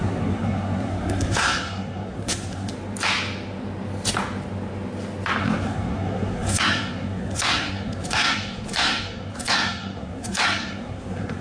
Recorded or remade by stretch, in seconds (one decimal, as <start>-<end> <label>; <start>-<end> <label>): 0.0-2.7 remade; 2.7-5.4 recorded; 5.4-11.4 remade